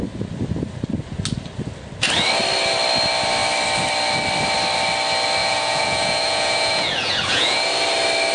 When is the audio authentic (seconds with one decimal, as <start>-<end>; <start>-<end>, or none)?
0.0-5.4; 7.7-8.3